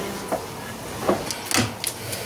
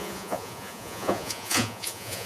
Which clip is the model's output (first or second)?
second